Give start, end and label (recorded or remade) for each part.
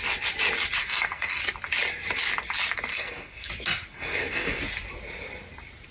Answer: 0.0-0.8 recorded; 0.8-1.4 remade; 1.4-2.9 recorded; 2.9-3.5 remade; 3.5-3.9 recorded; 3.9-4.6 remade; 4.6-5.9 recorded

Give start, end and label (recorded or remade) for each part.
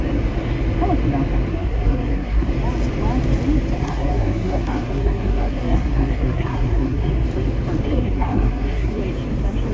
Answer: 0.0-1.5 recorded; 1.5-2.5 remade; 2.5-3.8 recorded; 3.8-7.1 remade; 7.1-7.9 recorded; 7.9-9.0 remade; 9.0-9.7 recorded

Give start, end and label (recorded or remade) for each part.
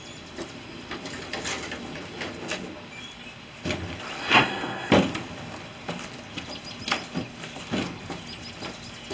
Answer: 0.0-4.2 recorded; 4.2-4.9 remade; 4.9-9.1 recorded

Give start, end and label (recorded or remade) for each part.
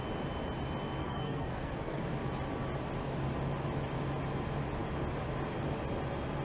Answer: 0.0-1.0 recorded; 1.0-2.0 remade; 2.0-6.4 recorded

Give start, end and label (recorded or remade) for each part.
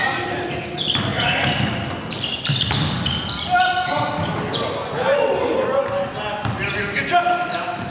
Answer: 0.0-7.9 recorded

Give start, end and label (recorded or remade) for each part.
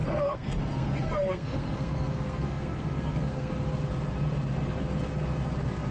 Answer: 0.0-3.5 remade; 3.5-5.9 recorded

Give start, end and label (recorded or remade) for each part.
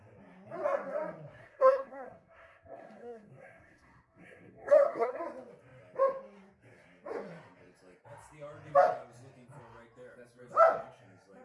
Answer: 0.0-1.4 recorded; 1.4-5.2 remade; 5.2-11.4 recorded